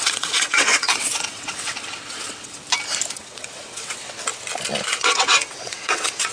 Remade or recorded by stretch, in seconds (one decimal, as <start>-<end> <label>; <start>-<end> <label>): 0.0-2.6 remade; 2.6-3.2 recorded; 3.2-4.3 remade; 4.3-4.9 recorded; 4.9-6.3 remade